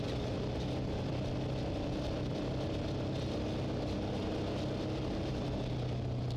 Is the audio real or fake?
real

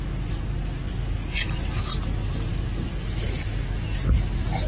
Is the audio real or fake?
real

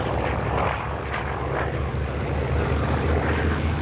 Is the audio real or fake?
real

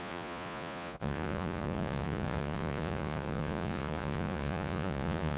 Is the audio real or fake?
fake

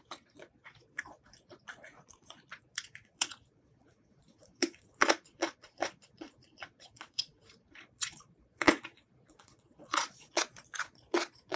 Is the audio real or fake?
fake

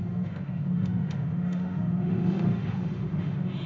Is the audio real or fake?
fake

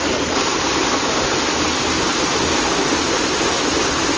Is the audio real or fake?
real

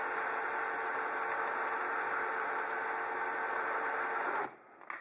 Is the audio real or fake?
real